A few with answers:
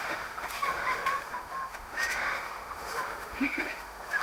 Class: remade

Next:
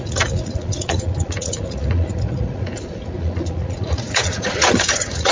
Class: remade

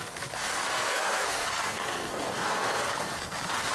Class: remade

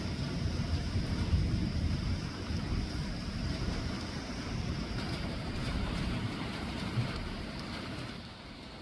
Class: remade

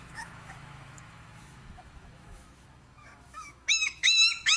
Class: remade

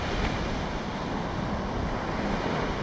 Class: recorded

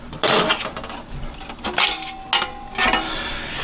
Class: recorded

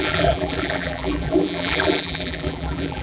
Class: remade